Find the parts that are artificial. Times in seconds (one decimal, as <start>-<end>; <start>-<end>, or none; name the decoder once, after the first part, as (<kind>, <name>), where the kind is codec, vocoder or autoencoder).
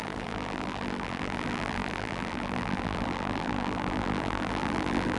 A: 0.0-5.2 (vocoder, BigVGAN v2)